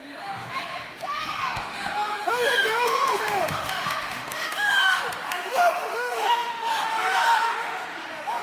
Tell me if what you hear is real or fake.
fake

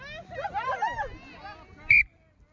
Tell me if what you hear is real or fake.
real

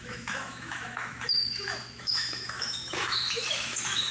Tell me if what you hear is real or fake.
fake